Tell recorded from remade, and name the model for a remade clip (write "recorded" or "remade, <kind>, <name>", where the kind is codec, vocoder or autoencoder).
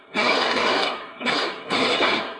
remade, codec, SNAC